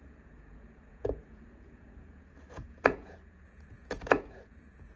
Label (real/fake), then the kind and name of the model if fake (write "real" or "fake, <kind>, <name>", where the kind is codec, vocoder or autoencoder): fake, vocoder, Vocos